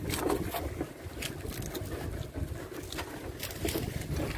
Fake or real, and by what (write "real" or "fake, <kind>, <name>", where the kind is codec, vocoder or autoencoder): real